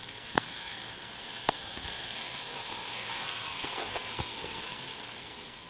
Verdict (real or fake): fake